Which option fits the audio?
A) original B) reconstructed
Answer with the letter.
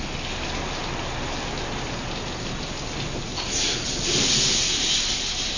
A